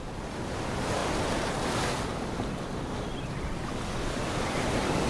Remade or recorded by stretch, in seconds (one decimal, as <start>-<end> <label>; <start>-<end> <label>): 0.0-1.0 remade; 1.0-3.3 recorded; 3.3-5.1 remade